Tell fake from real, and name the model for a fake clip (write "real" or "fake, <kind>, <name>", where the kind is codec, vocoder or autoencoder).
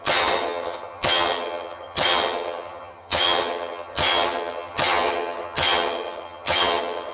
fake, vocoder, HiFi-GAN